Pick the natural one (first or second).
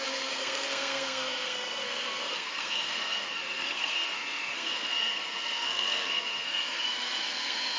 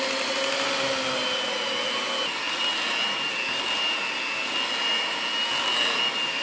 second